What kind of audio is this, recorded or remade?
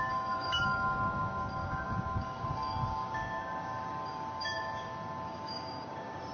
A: remade